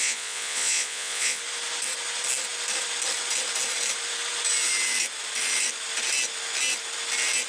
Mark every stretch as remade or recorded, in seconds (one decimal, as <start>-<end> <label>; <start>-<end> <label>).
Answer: 0.0-1.4 remade; 1.4-7.5 recorded